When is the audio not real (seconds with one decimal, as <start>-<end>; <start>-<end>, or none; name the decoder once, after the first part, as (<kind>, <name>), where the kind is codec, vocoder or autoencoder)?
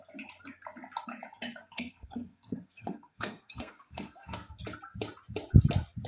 1.6-4.6 (codec, SNAC)